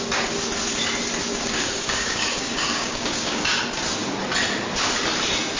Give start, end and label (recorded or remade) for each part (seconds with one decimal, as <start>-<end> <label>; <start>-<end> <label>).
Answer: 0.0-1.3 recorded; 1.3-3.6 remade; 3.6-5.6 recorded